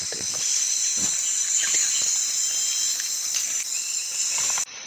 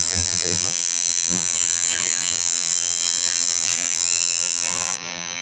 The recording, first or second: first